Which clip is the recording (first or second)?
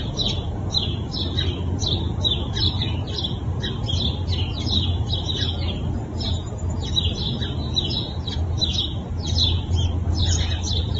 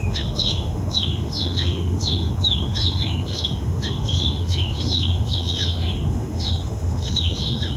first